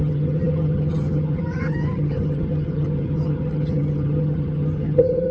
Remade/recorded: remade